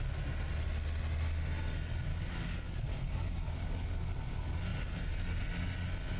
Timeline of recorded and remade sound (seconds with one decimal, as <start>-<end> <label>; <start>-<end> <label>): 0.0-2.1 recorded; 2.1-4.1 remade; 4.1-6.2 recorded